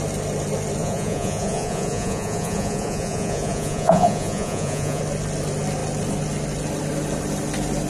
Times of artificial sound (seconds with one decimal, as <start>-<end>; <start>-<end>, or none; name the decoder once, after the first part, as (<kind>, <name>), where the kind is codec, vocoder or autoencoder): 0.8-5.0 (vocoder, Vocos)